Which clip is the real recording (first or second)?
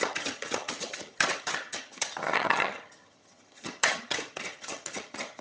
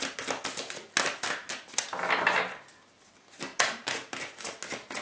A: second